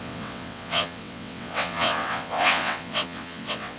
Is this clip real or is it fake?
fake